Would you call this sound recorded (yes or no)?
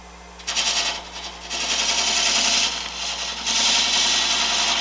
yes